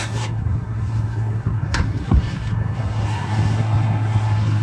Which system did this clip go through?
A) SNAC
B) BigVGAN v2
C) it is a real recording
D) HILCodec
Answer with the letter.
A